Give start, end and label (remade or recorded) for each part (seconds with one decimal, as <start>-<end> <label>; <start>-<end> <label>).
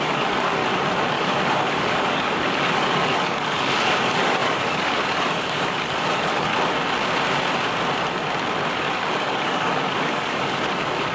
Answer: 0.0-0.6 remade; 0.6-1.1 recorded; 1.1-6.5 remade; 6.5-8.7 recorded; 8.7-11.1 remade